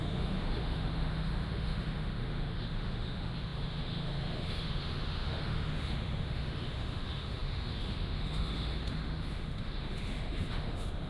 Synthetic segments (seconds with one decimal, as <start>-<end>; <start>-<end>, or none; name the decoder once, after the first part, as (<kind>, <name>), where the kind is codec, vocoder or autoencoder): 0.0-11.1 (autoencoder, DAC-VAE)